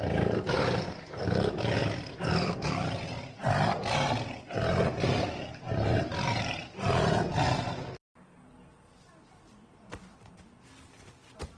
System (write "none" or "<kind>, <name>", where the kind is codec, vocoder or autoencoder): vocoder, BigVGAN v2